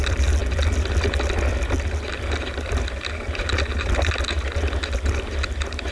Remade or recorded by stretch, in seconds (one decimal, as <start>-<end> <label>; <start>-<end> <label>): 0.0-5.9 recorded

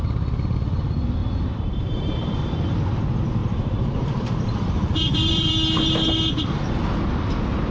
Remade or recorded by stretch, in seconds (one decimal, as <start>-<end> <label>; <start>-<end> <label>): 0.0-1.2 recorded; 1.2-2.5 remade; 2.5-3.4 recorded; 3.4-5.5 remade; 5.5-7.7 recorded

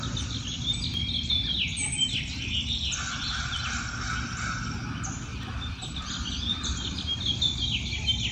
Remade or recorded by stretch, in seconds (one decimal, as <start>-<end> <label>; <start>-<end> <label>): 0.0-0.9 recorded; 0.9-1.4 remade; 1.4-1.8 recorded; 1.8-3.6 remade; 3.6-5.3 recorded; 5.3-7.1 remade; 7.1-8.3 recorded

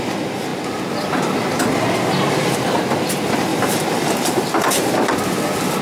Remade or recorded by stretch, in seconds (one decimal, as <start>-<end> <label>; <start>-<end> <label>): 0.0-3.5 recorded; 3.5-5.1 remade; 5.1-5.8 recorded

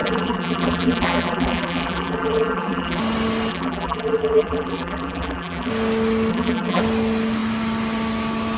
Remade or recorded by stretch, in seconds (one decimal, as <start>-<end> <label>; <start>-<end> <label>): 0.0-3.0 remade; 3.0-3.5 recorded; 3.5-5.7 remade; 5.7-6.3 recorded; 6.3-6.8 remade; 6.8-8.6 recorded

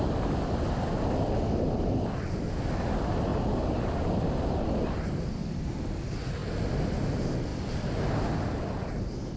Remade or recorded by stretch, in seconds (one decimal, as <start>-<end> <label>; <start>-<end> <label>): 0.0-7.5 recorded; 7.5-8.7 remade; 8.7-9.4 recorded

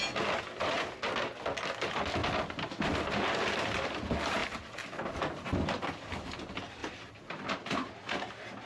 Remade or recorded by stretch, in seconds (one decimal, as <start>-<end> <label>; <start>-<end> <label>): 0.0-2.2 recorded; 2.2-3.9 remade; 3.9-6.8 recorded; 6.8-8.7 remade